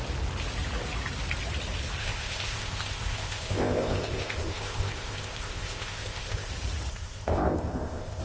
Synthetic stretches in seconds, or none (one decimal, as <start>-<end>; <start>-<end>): 2.0-6.5; 6.9-8.2